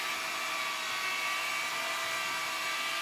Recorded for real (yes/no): yes